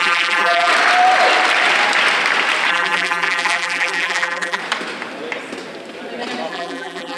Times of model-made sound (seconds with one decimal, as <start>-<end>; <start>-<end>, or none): 0.0-0.7; 2.7-4.6; 6.5-7.2